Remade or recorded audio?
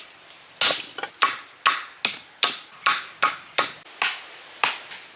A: recorded